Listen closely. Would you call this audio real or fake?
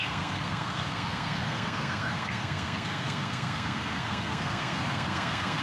fake